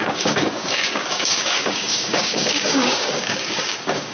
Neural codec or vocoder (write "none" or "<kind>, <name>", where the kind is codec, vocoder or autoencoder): codec, DAC